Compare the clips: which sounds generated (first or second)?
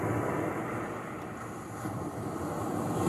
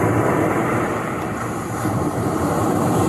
second